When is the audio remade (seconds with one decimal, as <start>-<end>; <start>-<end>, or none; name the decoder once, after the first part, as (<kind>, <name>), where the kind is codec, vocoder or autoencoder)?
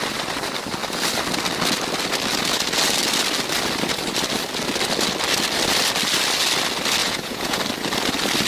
7.0-7.6 (vocoder, Vocos)